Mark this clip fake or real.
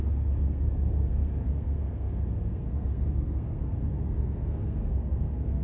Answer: fake